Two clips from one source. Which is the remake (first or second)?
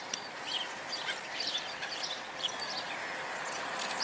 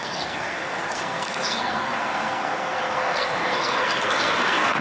second